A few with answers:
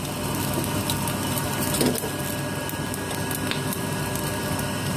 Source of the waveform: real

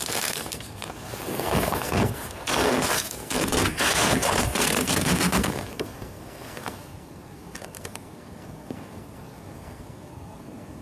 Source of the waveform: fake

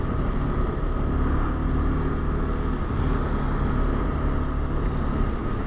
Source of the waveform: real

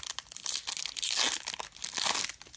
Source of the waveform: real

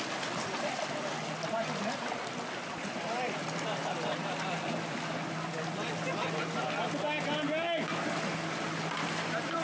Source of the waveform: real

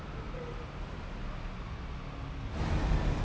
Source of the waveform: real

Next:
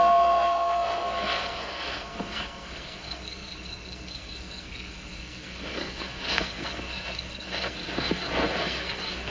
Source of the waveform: fake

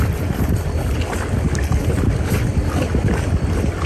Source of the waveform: real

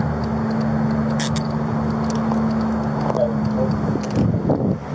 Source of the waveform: real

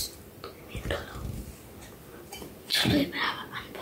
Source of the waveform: real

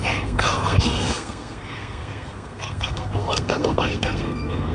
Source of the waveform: fake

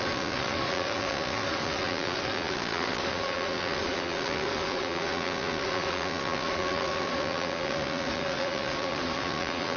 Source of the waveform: fake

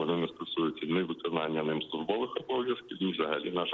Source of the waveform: real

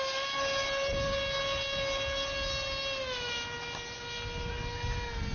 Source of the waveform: real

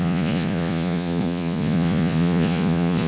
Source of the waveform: fake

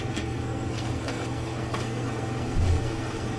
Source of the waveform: fake